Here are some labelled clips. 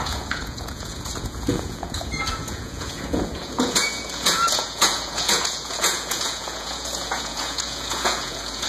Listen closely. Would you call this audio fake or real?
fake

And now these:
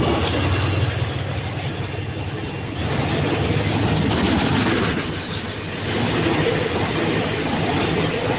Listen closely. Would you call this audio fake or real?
real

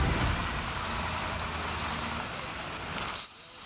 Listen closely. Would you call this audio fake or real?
real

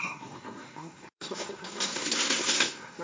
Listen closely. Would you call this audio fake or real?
fake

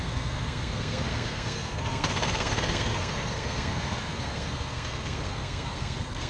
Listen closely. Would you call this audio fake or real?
fake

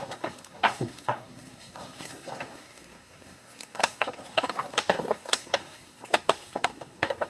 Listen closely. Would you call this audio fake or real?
fake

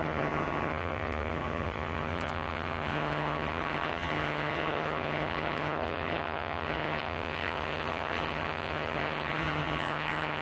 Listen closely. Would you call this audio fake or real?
fake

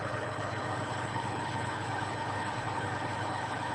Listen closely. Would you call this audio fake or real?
fake